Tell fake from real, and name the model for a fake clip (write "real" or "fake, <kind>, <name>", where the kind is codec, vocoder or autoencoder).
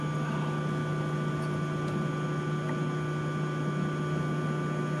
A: real